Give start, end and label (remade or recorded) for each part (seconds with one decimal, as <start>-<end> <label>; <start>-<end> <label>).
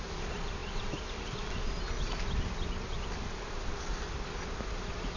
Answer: 0.0-5.2 recorded